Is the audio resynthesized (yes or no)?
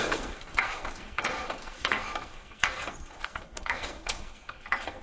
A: yes